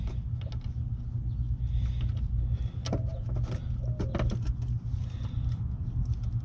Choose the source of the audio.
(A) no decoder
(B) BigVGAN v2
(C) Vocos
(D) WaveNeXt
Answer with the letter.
A